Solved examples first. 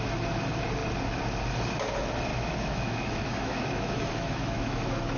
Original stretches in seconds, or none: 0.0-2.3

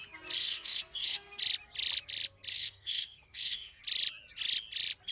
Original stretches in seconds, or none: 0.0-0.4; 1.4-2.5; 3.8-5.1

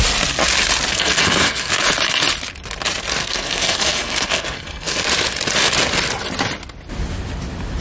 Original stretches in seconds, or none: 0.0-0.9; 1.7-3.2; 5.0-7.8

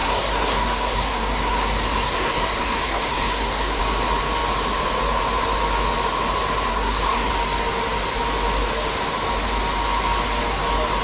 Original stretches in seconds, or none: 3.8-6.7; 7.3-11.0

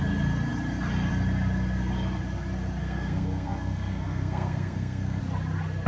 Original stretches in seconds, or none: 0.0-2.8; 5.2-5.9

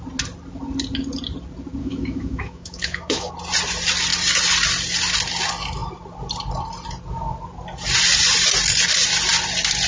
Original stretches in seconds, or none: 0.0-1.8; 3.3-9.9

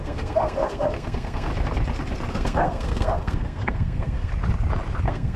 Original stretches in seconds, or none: 1.5-2.3; 4.3-5.0

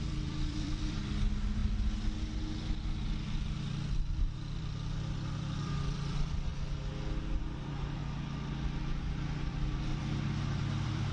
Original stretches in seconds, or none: 1.6-4.1; 6.5-7.4; 8.0-9.0